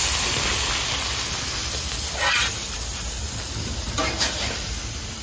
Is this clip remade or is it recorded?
recorded